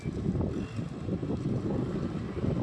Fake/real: real